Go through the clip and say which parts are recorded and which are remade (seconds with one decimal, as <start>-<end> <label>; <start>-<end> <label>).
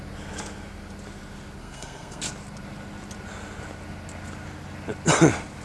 0.0-1.6 recorded; 1.6-2.2 remade; 2.2-5.6 recorded